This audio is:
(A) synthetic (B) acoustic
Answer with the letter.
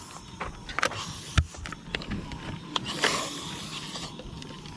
B